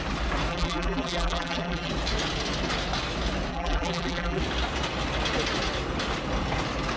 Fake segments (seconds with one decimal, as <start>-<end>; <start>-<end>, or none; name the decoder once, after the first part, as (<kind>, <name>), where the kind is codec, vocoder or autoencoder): 0.5-1.9 (vocoder, BigVGAN v2); 3.5-4.4